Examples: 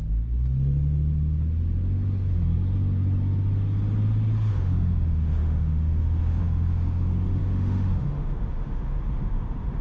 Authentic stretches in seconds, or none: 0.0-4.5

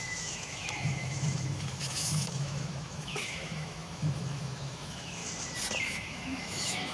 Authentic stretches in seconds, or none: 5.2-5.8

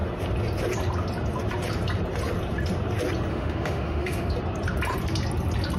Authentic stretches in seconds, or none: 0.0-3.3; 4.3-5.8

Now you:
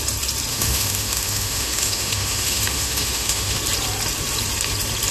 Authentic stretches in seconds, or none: 0.0-0.5; 3.6-5.1

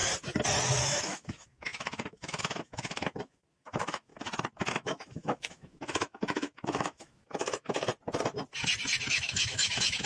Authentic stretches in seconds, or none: 0.0-0.8; 4.1-4.7; 7.9-9.1

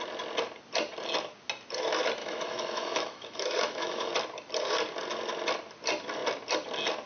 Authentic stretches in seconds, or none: 0.0-2.2; 4.1-7.1